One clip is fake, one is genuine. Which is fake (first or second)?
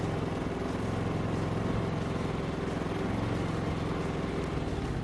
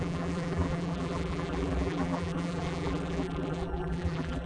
second